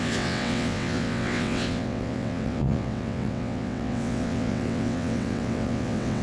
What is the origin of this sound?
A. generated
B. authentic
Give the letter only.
A